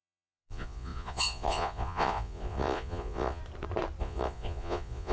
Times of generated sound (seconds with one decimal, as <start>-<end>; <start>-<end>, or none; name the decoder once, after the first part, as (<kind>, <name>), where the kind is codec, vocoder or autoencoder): 0.0-3.4 (vocoder, Vocos); 4.0-5.1